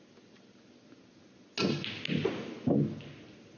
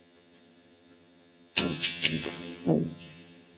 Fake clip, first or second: second